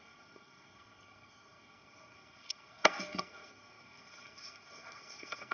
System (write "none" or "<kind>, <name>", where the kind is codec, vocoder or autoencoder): codec, SNAC